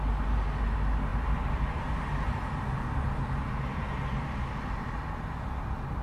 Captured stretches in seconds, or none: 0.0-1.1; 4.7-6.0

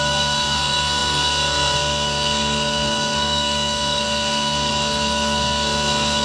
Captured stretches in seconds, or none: none

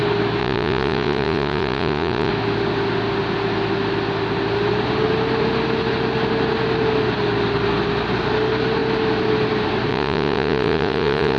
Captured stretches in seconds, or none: 0.0-0.4; 2.3-9.9

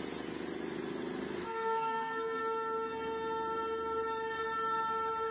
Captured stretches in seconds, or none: 0.0-1.4; 2.4-5.3

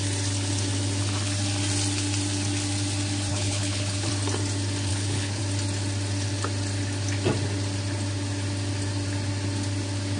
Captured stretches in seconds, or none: 0.0-3.3; 4.1-4.9; 5.4-10.2